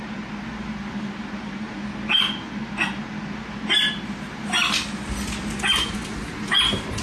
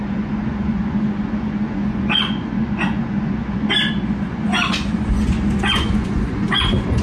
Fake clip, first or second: second